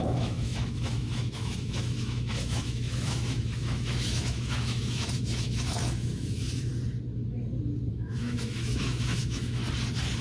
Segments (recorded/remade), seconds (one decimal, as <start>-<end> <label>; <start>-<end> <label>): 0.0-6.7 remade; 6.7-7.9 recorded; 7.9-9.6 remade; 9.6-10.2 recorded